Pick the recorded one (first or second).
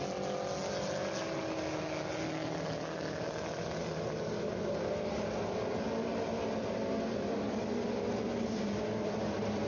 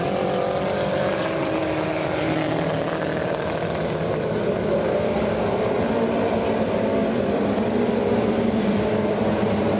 first